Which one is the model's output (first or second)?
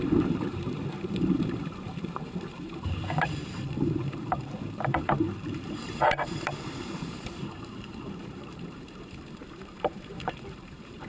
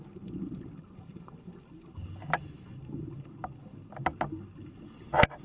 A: first